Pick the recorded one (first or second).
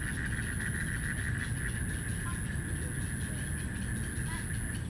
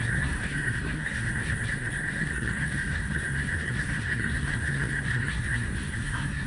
first